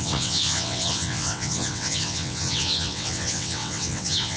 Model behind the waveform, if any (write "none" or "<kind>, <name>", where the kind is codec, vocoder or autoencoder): vocoder, WaveNeXt